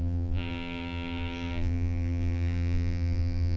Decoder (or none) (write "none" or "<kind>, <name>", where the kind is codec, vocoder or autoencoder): vocoder, BigVGAN v2